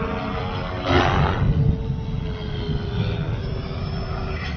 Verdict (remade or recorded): recorded